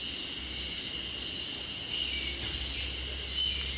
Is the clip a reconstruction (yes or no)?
no